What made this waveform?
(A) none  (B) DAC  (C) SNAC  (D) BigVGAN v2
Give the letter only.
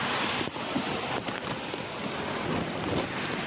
A